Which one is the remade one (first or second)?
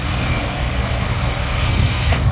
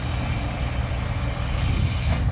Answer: first